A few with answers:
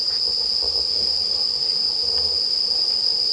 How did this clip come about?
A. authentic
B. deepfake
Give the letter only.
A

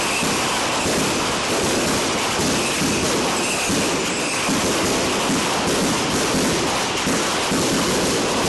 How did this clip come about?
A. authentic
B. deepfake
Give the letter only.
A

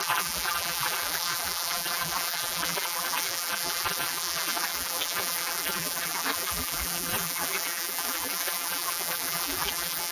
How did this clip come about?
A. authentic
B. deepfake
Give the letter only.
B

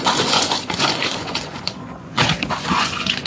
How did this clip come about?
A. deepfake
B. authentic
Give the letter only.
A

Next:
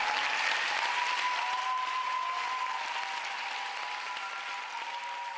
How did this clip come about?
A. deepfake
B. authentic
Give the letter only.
B